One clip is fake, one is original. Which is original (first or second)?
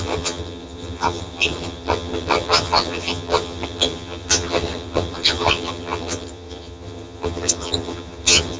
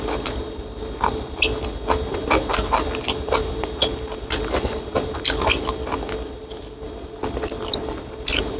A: second